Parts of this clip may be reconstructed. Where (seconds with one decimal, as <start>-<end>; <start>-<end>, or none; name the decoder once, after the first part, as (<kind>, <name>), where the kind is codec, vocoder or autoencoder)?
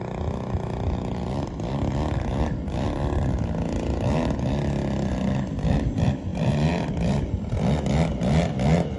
none